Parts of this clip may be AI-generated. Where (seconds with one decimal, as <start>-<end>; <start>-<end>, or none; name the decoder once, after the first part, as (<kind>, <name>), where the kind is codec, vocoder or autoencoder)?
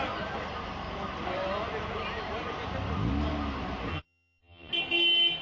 3.9-4.7 (vocoder, HiFi-GAN)